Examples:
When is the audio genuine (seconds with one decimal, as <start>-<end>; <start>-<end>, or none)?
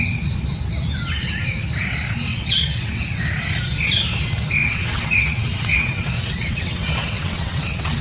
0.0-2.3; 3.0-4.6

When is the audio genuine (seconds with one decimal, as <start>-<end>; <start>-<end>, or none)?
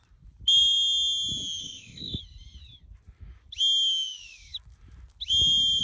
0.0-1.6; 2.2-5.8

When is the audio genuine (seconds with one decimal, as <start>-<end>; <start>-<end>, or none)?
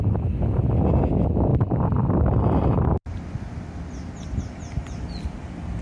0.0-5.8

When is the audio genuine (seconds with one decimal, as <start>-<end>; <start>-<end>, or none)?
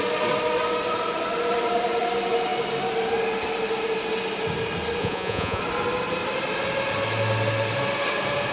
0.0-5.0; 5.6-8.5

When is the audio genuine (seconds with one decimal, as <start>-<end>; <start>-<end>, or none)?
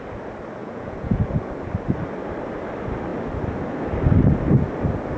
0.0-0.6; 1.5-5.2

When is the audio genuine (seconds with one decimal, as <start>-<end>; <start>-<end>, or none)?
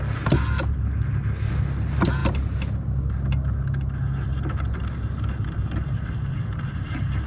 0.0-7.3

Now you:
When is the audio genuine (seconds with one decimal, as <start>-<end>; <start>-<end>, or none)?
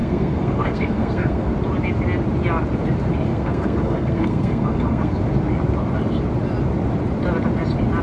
1.5-3.3; 5.2-8.0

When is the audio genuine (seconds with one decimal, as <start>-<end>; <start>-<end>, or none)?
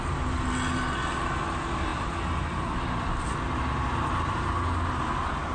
0.0-1.9; 3.2-5.5